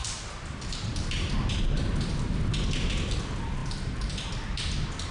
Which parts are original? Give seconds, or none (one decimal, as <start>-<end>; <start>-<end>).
1.8-3.6; 4.3-5.1